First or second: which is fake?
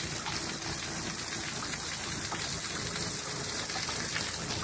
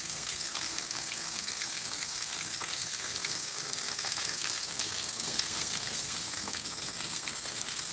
second